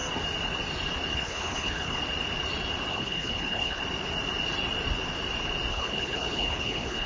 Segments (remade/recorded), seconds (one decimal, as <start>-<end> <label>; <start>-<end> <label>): 0.0-1.1 recorded; 1.1-2.0 remade; 2.0-2.9 recorded; 2.9-3.8 remade; 3.8-5.7 recorded; 5.7-7.1 remade